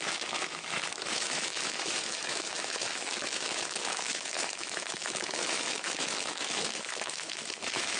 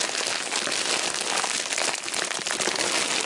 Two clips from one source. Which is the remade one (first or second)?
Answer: first